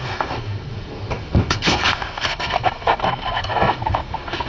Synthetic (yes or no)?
yes